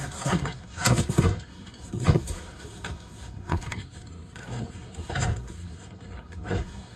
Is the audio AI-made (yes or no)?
yes